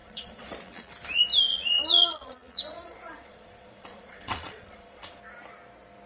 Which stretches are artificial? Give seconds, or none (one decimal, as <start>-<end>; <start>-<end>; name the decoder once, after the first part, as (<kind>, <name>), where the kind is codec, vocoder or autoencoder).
0.0-0.9 (vocoder, Vocos); 1.5-5.2